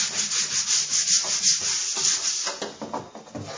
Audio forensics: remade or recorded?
recorded